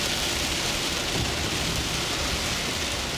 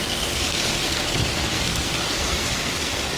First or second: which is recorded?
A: first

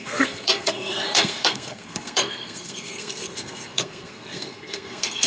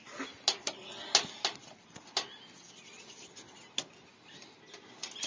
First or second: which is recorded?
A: second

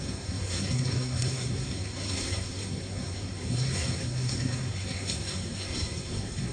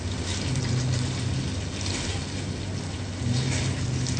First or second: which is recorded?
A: second